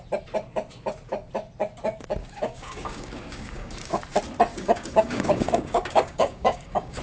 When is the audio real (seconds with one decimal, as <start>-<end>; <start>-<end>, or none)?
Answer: 0.0-2.2; 4.0-4.5